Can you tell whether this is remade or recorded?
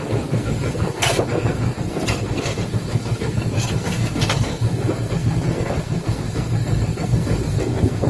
remade